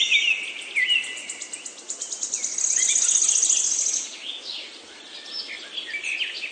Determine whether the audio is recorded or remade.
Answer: recorded